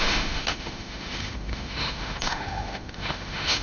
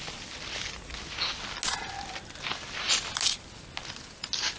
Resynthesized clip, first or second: first